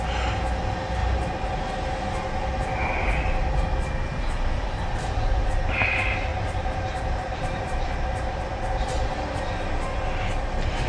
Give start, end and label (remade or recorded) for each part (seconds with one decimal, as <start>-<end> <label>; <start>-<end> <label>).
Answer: 0.0-1.0 recorded; 1.0-1.7 remade; 1.7-6.3 recorded; 6.3-9.8 remade; 9.8-10.9 recorded